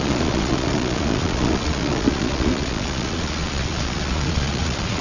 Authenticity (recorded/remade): remade